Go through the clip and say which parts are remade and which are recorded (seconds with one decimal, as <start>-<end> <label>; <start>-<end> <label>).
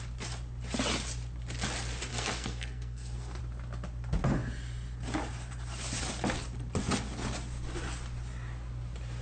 0.0-2.1 recorded; 2.1-3.4 remade; 3.4-9.2 recorded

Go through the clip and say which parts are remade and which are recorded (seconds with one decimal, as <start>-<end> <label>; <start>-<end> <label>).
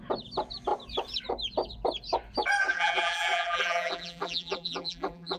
0.0-2.7 recorded; 2.7-5.4 remade